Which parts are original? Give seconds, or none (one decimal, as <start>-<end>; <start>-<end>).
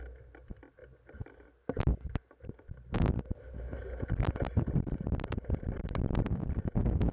0.0-7.1